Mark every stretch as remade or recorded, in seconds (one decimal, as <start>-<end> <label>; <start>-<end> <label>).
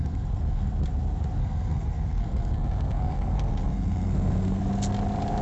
0.0-0.7 remade; 0.7-1.4 recorded; 1.4-4.6 remade; 4.6-5.4 recorded